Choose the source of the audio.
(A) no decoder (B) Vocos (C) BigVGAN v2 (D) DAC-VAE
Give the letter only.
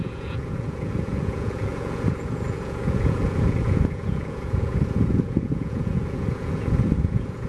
B